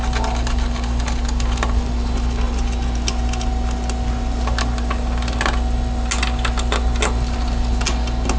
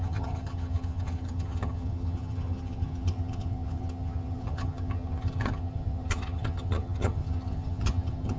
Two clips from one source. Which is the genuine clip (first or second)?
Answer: first